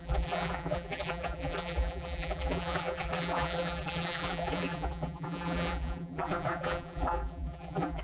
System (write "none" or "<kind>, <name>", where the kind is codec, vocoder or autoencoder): vocoder, BigVGAN v2